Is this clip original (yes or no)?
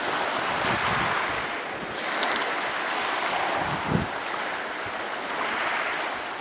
yes